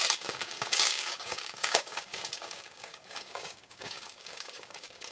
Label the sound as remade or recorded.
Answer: remade